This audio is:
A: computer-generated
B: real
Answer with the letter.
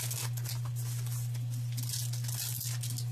B